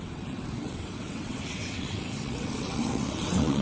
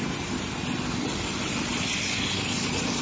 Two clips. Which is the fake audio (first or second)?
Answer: first